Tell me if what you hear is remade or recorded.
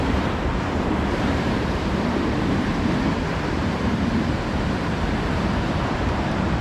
remade